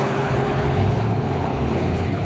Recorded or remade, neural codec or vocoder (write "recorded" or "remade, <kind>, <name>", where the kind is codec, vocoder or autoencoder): remade, codec, HILCodec